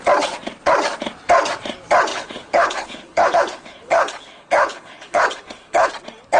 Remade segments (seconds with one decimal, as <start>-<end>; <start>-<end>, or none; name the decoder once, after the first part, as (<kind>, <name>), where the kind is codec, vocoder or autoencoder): 2.1-5.9 (codec, HILCodec)